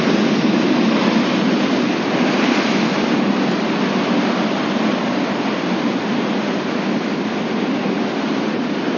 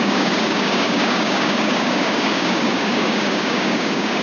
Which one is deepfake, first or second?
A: second